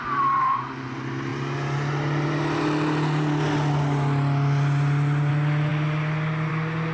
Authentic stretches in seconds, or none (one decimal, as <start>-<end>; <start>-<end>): 0.0-6.9